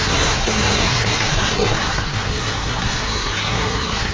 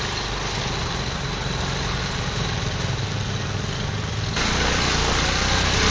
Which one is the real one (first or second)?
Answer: second